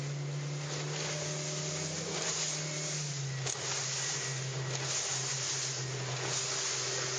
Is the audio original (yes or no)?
yes